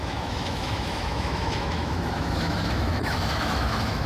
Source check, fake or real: fake